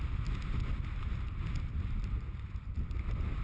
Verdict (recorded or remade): recorded